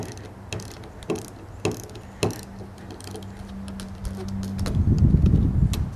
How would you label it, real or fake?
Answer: real